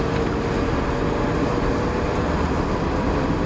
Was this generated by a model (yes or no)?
no